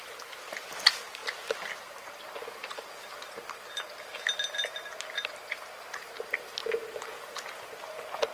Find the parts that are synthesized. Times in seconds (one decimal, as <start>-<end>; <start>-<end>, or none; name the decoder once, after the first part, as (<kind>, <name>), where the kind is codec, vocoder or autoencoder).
none